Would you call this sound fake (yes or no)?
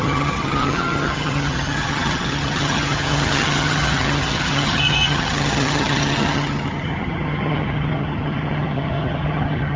yes